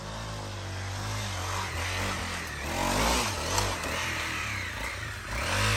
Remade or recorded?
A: recorded